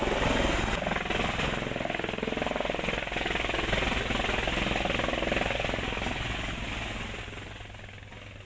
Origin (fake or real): real